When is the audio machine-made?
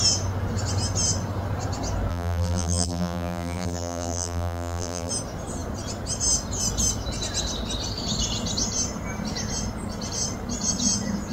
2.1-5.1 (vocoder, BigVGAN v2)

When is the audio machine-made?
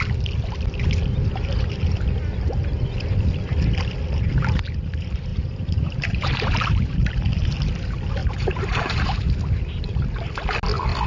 5.3-7.2 (vocoder, BigVGAN v2); 8.2-9.3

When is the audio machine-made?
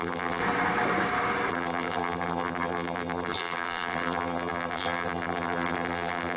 0.0-0.4 (vocoder, BigVGAN v2); 1.5-6.4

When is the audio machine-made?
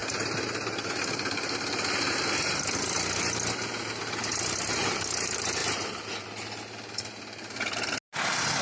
4.8-5.6 (vocoder, BigVGAN v2)